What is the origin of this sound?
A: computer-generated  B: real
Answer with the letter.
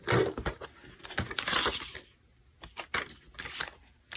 B